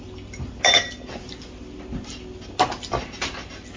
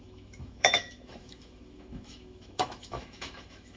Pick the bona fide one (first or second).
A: first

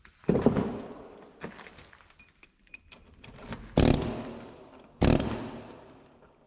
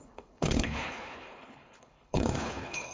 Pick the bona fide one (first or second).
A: first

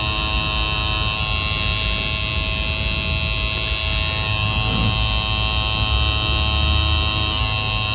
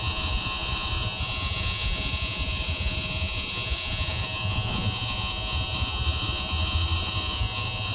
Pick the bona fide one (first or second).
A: first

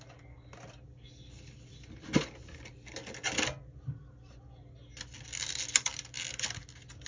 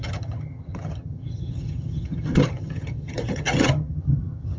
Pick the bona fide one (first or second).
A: first